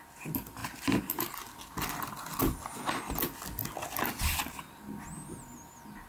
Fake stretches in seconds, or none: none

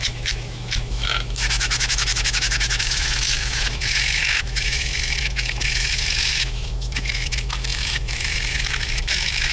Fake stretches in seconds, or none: 0.0-9.5 (autoencoder, DAC-VAE)

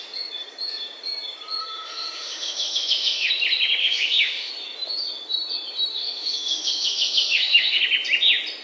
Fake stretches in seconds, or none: 1.6-3.3 (autoencoder, DAC-VAE); 3.8-4.5; 5.9-7.8